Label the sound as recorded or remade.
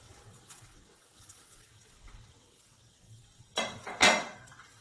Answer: remade